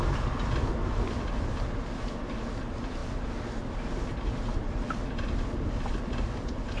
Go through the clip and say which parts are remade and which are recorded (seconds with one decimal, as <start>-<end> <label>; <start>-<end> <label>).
0.0-6.8 recorded